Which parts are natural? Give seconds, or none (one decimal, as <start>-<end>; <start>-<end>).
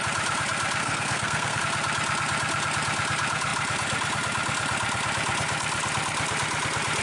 0.0-0.8; 1.6-7.0